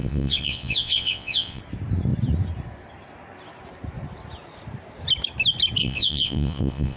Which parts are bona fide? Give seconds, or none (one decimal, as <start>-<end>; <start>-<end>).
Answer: 1.6-5.8

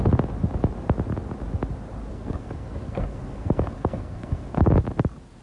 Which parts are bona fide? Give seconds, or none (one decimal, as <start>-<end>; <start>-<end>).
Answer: 0.0-2.1; 4.7-5.4

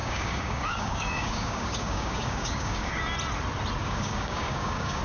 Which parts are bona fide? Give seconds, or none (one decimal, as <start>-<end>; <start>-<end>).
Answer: 3.0-3.8